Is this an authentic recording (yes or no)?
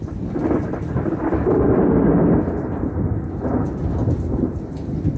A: yes